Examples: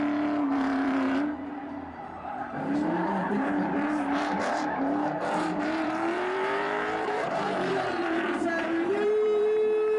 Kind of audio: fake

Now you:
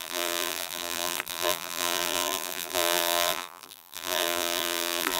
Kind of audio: fake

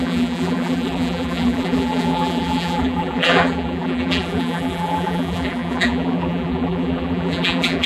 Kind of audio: fake